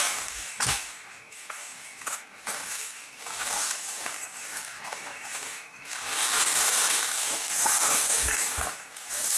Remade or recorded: remade